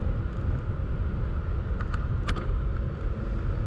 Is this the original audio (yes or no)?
yes